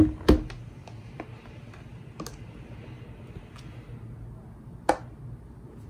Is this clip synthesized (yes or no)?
no